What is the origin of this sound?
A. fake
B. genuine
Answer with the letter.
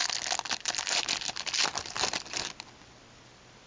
B